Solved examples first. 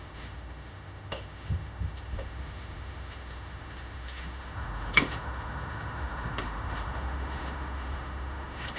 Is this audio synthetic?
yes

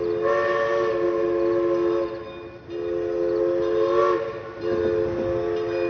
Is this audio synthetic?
no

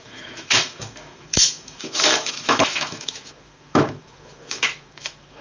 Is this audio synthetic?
yes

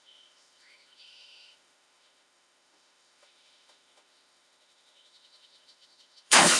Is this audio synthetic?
yes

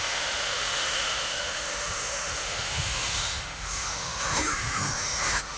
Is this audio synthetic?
yes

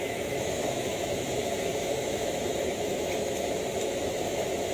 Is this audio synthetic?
yes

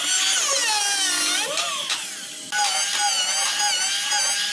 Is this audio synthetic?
no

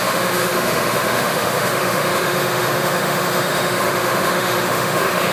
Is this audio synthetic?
yes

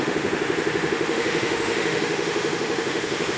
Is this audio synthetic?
yes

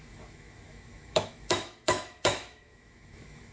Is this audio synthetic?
yes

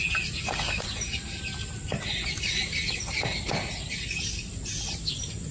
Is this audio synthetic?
no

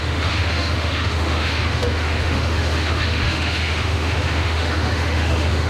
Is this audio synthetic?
yes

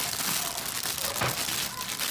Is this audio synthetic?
no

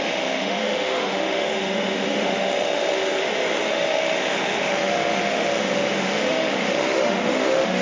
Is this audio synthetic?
yes